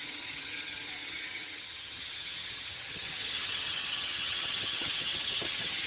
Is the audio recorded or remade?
remade